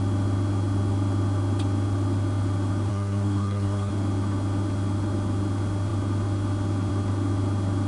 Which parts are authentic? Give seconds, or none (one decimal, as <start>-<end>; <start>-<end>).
0.0-2.9; 3.9-7.9